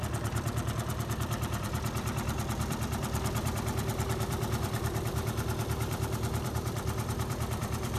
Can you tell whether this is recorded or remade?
remade